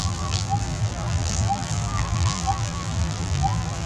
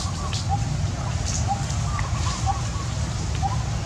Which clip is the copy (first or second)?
first